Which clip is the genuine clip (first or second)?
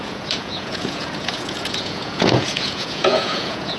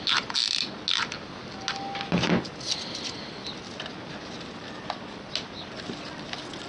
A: second